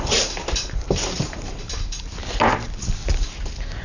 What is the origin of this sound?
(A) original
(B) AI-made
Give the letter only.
A